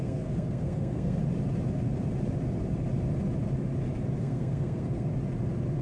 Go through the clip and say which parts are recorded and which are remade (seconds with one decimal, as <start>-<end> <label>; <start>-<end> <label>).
0.0-1.2 remade; 1.2-4.2 recorded; 4.2-5.1 remade; 5.1-5.8 recorded